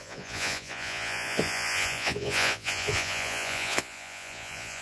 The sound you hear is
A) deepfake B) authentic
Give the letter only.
A